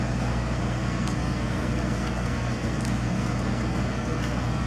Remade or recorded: remade